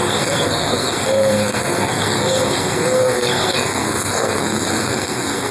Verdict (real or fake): fake